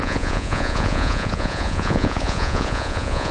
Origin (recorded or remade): remade